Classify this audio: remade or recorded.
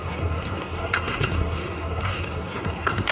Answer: remade